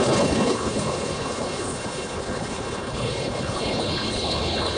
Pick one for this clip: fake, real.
fake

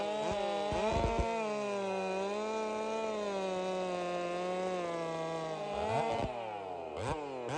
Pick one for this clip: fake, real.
real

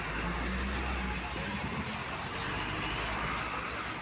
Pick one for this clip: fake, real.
real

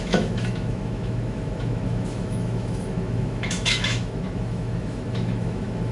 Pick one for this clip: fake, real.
fake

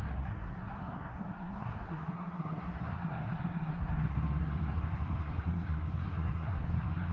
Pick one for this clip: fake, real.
fake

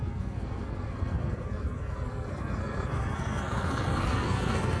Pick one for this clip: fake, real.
fake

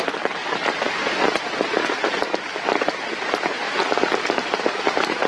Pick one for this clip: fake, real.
real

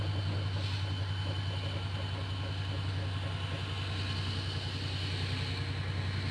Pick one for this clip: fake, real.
real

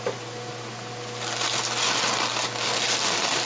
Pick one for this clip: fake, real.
real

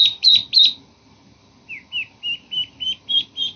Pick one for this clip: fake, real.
real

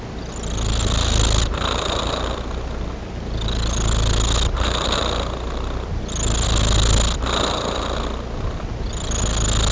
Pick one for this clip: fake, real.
real